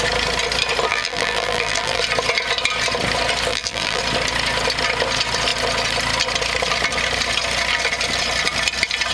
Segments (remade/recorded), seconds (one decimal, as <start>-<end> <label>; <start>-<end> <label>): 0.0-0.9 recorded; 0.9-2.0 remade; 2.0-3.5 recorded; 3.5-4.0 remade; 4.0-9.1 recorded